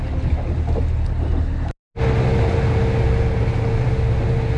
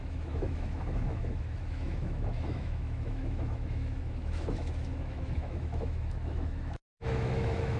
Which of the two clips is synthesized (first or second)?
second